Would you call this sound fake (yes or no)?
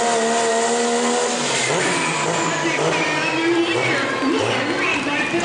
no